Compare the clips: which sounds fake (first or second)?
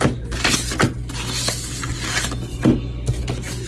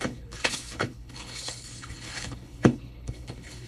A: second